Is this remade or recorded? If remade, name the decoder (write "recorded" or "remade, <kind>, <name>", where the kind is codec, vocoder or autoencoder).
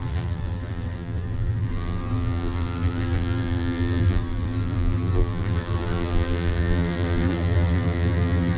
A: remade, vocoder, BigVGAN v2